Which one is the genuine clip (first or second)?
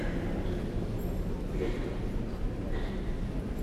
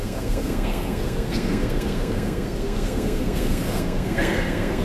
first